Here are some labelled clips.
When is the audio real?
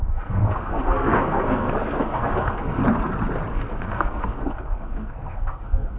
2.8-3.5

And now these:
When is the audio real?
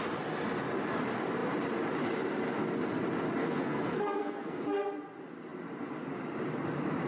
0.0-3.4; 4.6-7.1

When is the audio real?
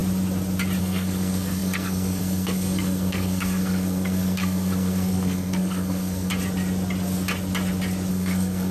0.0-0.8; 6.3-8.1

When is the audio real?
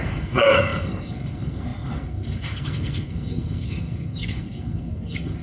none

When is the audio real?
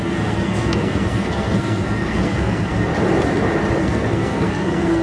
2.9-3.8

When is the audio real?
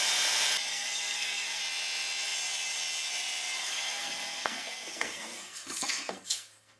0.0-0.7; 1.6-3.6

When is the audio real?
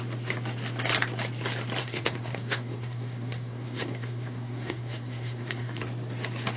0.0-1.8; 5.8-6.6